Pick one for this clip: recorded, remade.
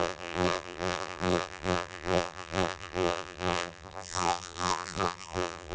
remade